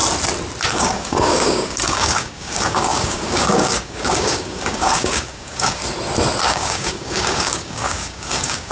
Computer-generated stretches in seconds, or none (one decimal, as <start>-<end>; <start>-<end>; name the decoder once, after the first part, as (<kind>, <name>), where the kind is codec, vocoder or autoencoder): 0.7-5.8 (codec, DAC); 6.4-8.7